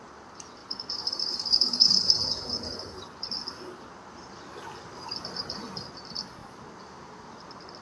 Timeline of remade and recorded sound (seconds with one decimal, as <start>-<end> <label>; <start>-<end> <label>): 0.0-0.6 recorded; 0.6-3.0 remade; 3.0-7.8 recorded